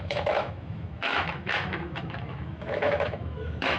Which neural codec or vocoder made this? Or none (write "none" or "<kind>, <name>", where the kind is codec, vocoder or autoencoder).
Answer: autoencoder, DAC-VAE